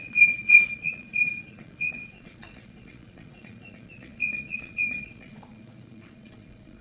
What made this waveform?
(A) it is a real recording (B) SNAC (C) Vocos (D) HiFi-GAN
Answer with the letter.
C